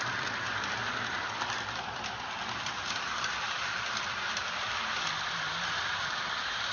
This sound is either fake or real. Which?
fake